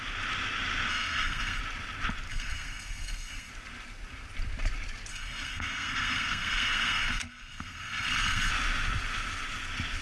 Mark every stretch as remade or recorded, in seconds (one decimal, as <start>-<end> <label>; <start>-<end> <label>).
0.0-0.9 recorded; 0.9-1.6 remade; 1.6-2.3 recorded; 2.3-3.5 remade; 3.5-5.1 recorded; 5.1-8.5 remade; 8.5-10.0 recorded